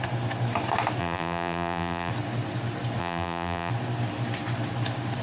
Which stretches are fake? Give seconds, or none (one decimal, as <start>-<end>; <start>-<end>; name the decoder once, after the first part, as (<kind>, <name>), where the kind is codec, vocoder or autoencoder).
1.0-2.1 (vocoder, BigVGAN v2); 3.0-3.7